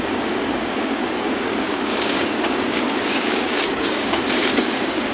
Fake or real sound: fake